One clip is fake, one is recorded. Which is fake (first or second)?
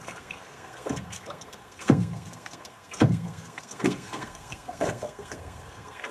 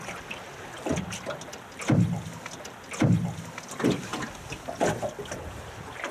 first